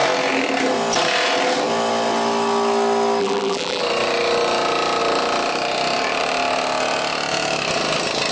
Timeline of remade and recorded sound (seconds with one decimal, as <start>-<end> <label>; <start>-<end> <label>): 0.0-3.2 recorded; 3.2-3.8 remade; 3.8-8.3 recorded